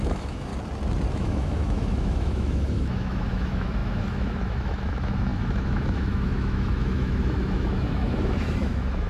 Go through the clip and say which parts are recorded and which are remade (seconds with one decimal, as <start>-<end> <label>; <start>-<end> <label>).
0.0-0.5 remade; 0.5-1.1 recorded; 1.1-9.1 remade